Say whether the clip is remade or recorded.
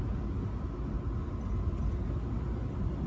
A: recorded